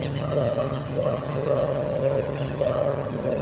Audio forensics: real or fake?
fake